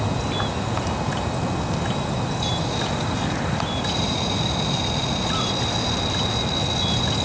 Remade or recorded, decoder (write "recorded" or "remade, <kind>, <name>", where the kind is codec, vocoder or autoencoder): recorded